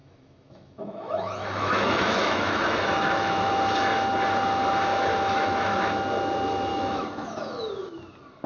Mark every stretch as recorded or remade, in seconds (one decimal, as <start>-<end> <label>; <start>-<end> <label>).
0.0-3.5 remade; 3.5-4.9 recorded; 4.9-6.0 remade; 6.0-6.7 recorded; 6.7-7.7 remade; 7.7-8.5 recorded